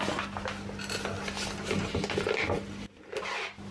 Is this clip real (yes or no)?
yes